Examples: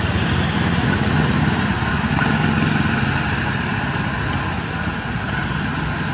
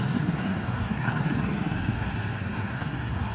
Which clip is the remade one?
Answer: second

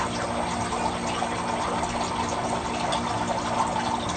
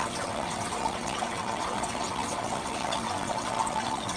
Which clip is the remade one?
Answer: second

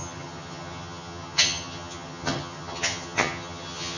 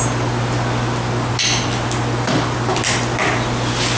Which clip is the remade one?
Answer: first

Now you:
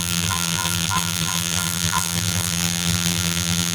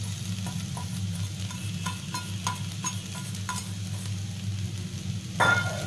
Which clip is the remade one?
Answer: first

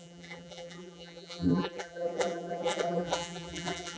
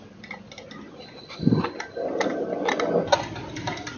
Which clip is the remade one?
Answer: first